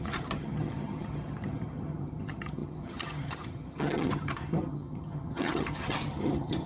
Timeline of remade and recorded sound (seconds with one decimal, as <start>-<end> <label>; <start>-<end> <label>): 0.0-6.7 remade